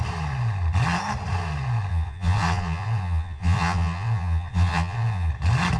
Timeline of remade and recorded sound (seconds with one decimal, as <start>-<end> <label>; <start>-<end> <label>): 0.0-1.9 recorded; 1.9-5.3 remade; 5.3-5.8 recorded